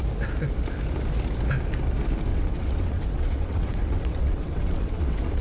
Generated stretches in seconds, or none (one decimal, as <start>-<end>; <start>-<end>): 2.3-5.4